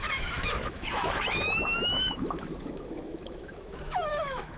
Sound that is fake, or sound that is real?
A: fake